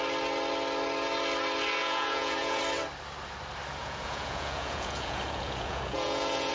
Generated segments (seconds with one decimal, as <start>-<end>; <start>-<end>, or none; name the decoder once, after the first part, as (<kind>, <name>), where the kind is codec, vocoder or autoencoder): 1.8-2.6 (vocoder, Vocos); 3.8-6.5